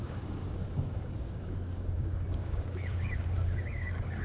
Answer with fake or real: fake